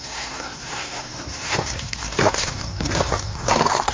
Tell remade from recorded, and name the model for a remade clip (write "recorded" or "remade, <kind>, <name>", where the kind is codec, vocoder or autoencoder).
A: remade, codec, SNAC